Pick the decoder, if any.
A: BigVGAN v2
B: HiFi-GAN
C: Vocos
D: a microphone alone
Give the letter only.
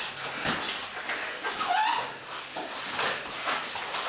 D